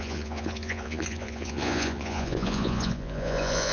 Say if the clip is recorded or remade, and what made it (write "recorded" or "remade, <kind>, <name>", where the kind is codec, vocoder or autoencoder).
remade, vocoder, Vocos